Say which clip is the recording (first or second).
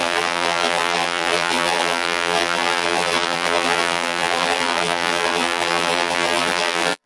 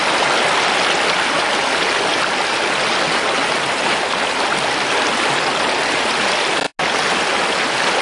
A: second